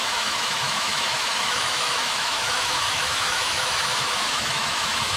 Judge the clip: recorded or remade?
remade